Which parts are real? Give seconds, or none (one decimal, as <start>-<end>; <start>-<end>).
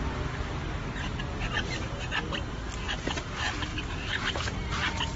0.0-3.7; 4.6-5.2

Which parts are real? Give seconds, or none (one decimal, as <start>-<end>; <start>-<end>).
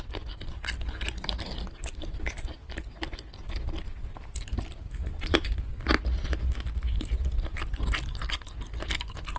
0.0-9.4